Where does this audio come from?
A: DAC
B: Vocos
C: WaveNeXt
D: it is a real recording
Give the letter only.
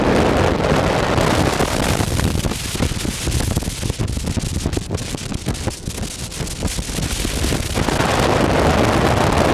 D